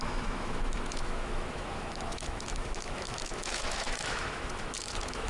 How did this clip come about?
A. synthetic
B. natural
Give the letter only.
A